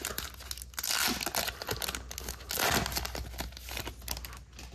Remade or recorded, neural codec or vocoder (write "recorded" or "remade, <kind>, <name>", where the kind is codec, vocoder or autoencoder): recorded